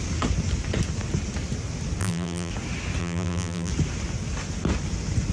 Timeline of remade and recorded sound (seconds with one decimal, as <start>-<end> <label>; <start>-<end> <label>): 0.0-2.0 recorded; 2.0-2.5 remade; 2.5-3.0 recorded; 3.0-3.7 remade; 3.7-5.3 recorded

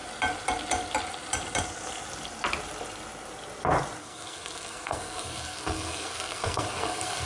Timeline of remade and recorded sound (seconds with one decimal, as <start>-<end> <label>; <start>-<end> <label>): 0.0-4.0 recorded; 4.0-7.3 remade